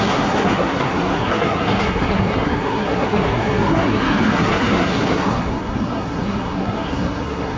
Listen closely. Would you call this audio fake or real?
fake